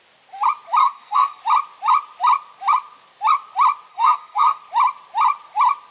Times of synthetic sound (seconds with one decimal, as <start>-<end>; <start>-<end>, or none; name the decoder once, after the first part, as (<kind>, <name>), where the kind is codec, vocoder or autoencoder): 0.8-1.4 (codec, SNAC); 3.9-4.6